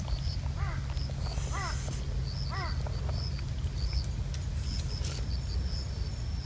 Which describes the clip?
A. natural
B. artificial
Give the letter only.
A